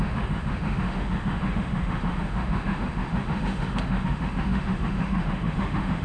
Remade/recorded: remade